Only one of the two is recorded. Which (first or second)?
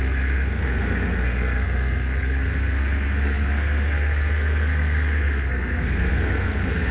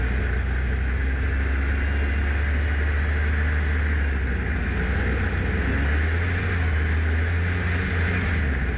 second